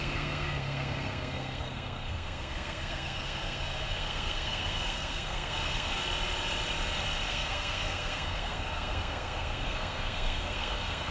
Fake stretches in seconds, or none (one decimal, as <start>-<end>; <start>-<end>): 0.0-6.0; 7.3-11.1